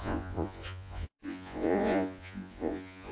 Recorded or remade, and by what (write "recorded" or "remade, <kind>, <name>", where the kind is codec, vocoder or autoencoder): remade, vocoder, Vocos